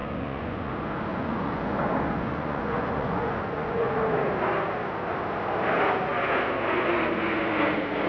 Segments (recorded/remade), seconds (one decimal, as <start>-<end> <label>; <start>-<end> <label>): 0.0-0.7 remade; 0.7-1.1 recorded; 1.1-4.0 remade; 4.0-8.1 recorded